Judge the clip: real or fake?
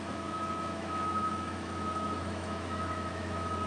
fake